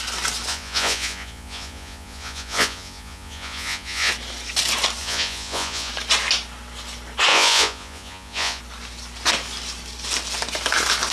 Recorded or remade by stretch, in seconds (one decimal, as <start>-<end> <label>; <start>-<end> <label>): 0.0-0.5 recorded; 0.5-4.1 remade; 4.1-5.0 recorded; 5.0-5.9 remade; 5.9-7.3 recorded; 7.3-8.6 remade; 8.6-11.1 recorded

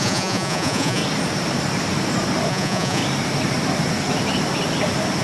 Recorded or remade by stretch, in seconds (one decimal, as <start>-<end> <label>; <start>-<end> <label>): 0.0-1.0 remade; 1.0-2.5 recorded; 2.5-3.0 remade; 3.0-5.2 recorded

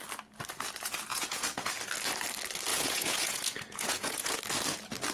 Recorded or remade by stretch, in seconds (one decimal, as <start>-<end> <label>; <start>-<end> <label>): 0.0-1.1 recorded; 1.1-1.7 remade; 1.7-2.7 recorded; 2.7-4.4 remade; 4.4-5.1 recorded

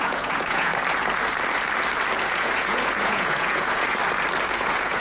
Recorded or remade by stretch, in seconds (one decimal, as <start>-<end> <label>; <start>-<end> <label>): 0.0-0.7 remade; 0.7-2.3 recorded; 2.3-4.0 remade; 4.0-4.5 recorded; 4.5-5.0 remade

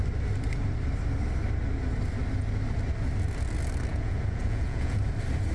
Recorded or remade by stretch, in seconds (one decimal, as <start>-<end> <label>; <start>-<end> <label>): 0.0-3.9 recorded; 3.9-5.0 remade; 5.0-5.5 recorded

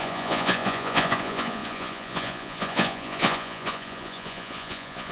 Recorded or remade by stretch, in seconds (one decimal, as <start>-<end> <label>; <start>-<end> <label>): 0.0-5.1 remade